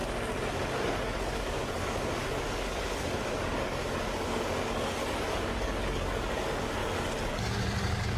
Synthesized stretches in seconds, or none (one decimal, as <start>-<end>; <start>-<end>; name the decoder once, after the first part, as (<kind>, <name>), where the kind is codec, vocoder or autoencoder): 0.5-6.8 (codec, DAC); 7.3-8.2